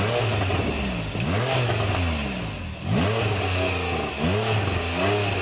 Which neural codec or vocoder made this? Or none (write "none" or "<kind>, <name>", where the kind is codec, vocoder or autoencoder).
none